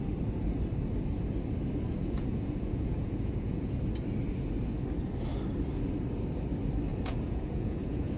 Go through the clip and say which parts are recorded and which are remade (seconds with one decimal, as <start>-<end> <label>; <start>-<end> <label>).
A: 0.0-2.0 recorded; 2.0-3.8 remade; 3.8-6.9 recorded; 6.9-8.2 remade